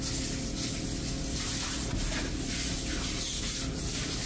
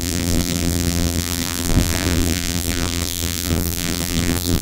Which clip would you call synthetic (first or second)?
second